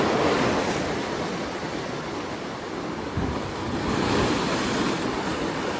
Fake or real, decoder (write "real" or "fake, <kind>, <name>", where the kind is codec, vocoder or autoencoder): real